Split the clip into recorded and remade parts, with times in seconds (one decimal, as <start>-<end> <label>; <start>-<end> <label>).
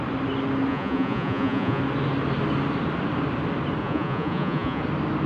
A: 0.0-0.7 recorded; 0.7-1.8 remade; 1.8-3.8 recorded; 3.8-4.8 remade; 4.8-5.3 recorded